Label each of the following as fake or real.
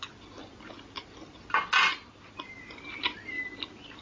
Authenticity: real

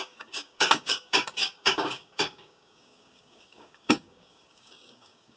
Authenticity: fake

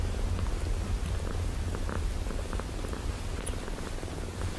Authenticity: real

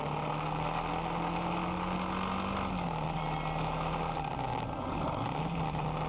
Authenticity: real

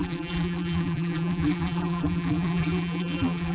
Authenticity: fake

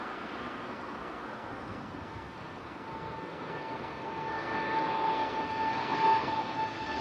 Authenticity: fake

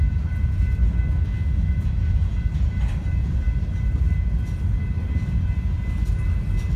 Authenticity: real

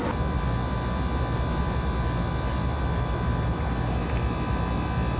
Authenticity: real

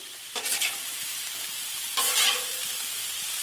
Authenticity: fake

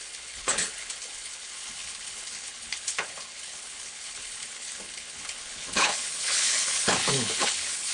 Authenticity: fake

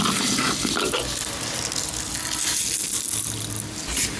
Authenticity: real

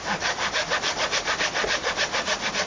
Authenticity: real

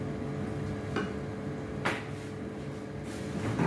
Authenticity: real